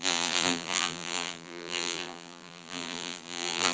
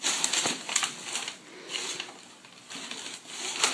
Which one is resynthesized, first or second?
first